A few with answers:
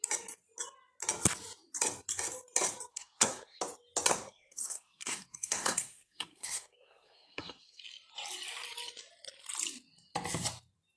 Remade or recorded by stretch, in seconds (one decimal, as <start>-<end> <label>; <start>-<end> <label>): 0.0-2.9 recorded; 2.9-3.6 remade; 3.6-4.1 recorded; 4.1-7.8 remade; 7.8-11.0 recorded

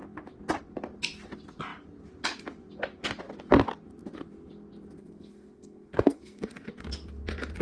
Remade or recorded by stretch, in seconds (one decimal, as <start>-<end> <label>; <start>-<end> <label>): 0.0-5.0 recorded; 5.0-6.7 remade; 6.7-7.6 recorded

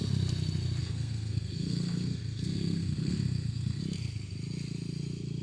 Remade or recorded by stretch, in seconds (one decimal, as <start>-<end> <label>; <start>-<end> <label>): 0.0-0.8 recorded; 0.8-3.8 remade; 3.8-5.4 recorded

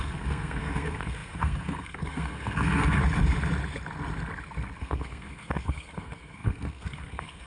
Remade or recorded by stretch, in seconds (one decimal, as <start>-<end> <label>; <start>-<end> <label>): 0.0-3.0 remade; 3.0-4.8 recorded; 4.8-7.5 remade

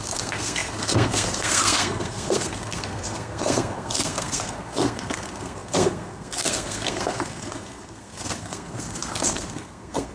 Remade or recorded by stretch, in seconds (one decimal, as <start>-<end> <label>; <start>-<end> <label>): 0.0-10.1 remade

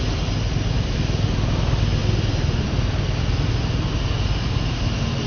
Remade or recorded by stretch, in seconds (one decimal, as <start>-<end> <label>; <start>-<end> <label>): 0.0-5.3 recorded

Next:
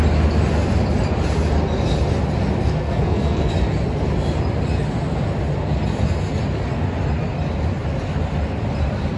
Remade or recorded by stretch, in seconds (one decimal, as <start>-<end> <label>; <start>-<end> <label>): 0.0-2.6 recorded; 2.6-3.5 remade; 3.5-9.2 recorded